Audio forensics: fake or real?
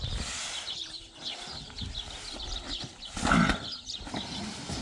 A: real